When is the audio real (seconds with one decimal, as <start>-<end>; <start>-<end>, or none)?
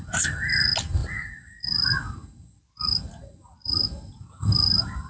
0.0-5.1